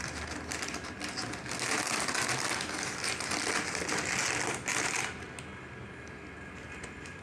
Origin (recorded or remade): recorded